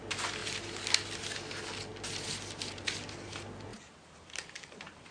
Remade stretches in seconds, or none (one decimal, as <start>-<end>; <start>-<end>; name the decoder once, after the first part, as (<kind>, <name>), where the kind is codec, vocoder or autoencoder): 3.7-5.1 (vocoder, BigVGAN v2)